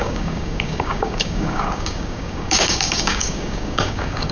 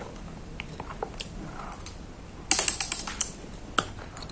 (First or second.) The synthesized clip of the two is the first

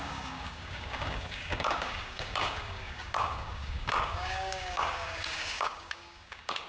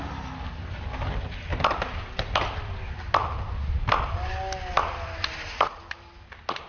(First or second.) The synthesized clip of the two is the first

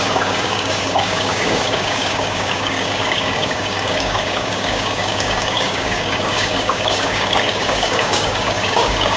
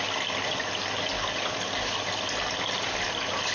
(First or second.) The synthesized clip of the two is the first